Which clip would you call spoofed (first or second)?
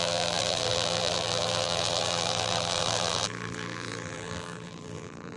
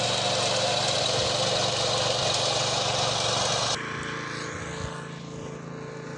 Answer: first